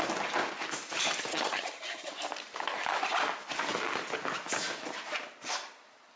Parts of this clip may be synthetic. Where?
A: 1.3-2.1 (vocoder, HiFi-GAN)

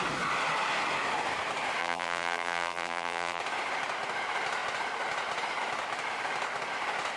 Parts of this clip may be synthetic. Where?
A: 1.8-3.4 (vocoder, BigVGAN v2)

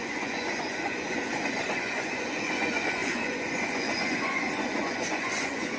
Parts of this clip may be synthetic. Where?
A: 0.0-5.8 (vocoder, Vocos)

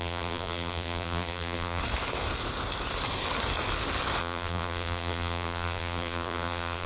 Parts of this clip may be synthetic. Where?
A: 0.0-1.8 (vocoder, BigVGAN v2); 4.2-6.9

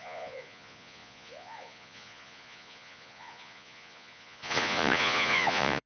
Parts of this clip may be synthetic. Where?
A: 0.0-5.9 (vocoder, Vocos)

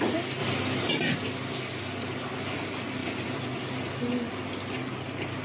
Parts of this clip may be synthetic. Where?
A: 0.4-0.9 (vocoder, BigVGAN v2); 3.0-4.4

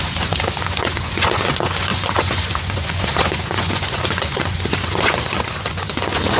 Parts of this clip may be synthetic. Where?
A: 0.0-6.4 (vocoder, Vocos)